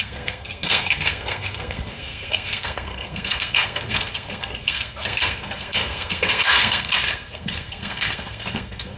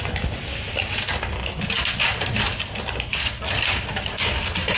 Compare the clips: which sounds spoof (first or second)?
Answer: first